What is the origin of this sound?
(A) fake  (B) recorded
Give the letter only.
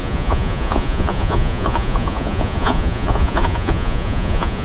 A